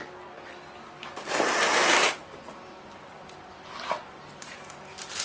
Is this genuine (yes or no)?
yes